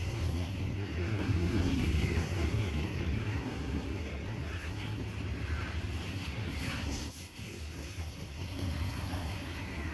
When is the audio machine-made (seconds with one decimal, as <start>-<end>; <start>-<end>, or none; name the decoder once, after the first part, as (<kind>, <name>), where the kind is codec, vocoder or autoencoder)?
0.0-5.0 (codec, SNAC); 6.1-9.9